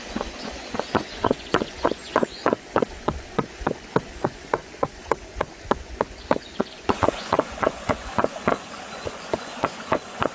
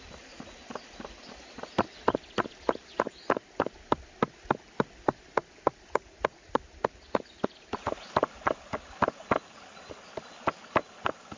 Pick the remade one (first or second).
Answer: first